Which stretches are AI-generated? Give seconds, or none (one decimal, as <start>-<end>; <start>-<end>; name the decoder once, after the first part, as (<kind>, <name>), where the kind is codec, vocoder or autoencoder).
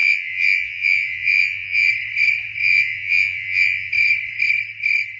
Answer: 0.0-1.9 (vocoder, Vocos); 2.6-3.9